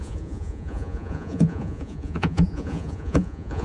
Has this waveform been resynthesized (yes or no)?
yes